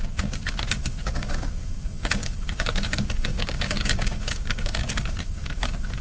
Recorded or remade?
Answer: remade